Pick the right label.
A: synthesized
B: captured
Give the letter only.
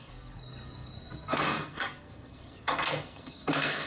A